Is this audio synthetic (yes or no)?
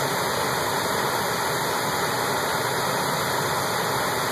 no